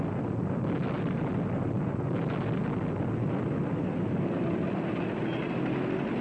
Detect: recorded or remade recorded